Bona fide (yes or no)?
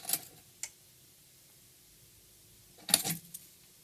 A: yes